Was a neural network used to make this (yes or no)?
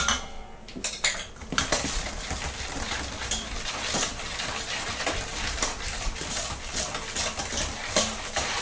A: no